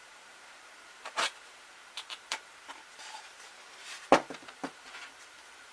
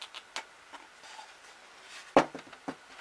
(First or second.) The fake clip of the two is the first